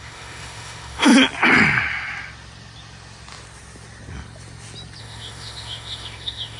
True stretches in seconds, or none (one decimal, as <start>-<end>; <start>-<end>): 1.1-5.0